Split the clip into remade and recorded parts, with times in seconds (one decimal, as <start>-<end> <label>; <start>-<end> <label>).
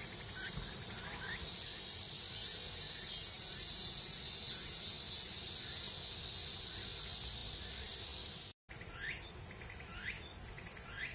0.0-11.1 recorded